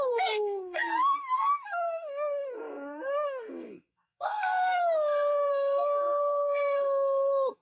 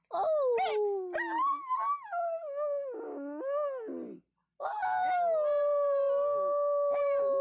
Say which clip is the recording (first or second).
second